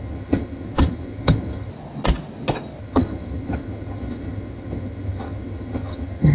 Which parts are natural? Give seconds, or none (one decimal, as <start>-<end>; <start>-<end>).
1.7-2.8